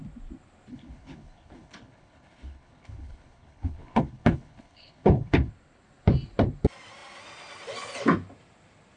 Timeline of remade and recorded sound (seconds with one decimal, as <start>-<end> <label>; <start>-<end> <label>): 0.0-0.7 recorded; 0.7-5.5 remade; 5.5-9.0 recorded